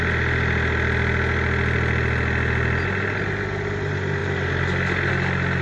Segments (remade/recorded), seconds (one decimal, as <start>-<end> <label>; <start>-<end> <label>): 0.0-5.6 recorded

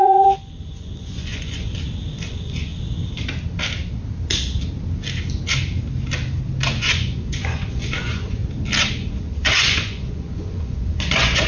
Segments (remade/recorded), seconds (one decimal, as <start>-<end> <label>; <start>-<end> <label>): 0.0-1.7 remade; 1.7-2.3 recorded; 2.3-2.7 remade; 2.7-6.8 recorded; 6.8-8.4 remade; 8.4-8.9 recorded; 8.9-11.5 remade

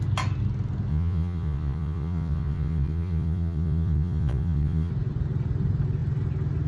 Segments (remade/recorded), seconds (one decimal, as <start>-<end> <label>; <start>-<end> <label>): 0.0-0.9 recorded; 0.9-4.9 remade; 4.9-6.7 recorded

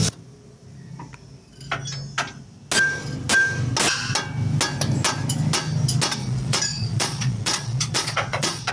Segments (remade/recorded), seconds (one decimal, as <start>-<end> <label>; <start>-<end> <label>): 0.0-6.2 recorded; 6.2-8.7 remade

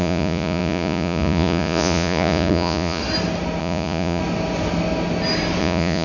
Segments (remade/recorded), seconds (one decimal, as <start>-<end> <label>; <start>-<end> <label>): 0.0-3.0 remade; 3.0-3.6 recorded; 3.6-4.2 remade; 4.2-5.6 recorded; 5.6-6.0 remade

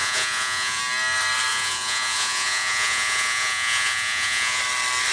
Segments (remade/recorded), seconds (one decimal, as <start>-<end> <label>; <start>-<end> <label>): 0.0-0.8 remade; 0.8-1.5 recorded; 1.5-4.6 remade; 4.6-5.1 recorded